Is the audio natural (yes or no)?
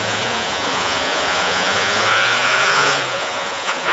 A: no